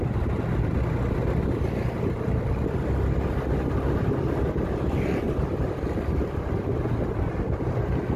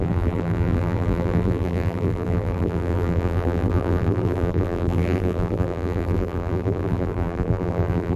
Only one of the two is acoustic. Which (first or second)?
first